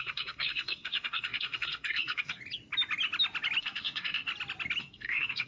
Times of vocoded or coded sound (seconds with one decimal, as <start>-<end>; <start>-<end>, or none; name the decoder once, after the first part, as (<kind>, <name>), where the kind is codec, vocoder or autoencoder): 0.0-2.4 (codec, SNAC); 3.6-4.3; 4.8-5.5